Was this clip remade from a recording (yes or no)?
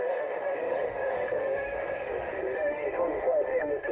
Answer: yes